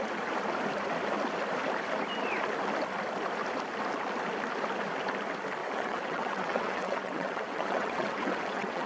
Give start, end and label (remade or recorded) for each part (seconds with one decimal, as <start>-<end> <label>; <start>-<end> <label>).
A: 0.0-5.6 recorded; 5.6-8.9 remade